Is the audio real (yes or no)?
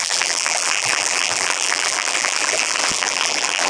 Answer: no